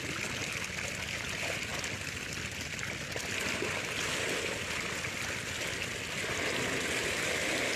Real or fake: real